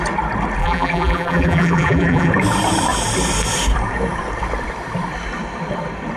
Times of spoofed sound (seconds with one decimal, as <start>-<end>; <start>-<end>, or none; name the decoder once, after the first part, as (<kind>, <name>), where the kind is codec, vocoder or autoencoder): 0.6-2.3 (vocoder, BigVGAN v2)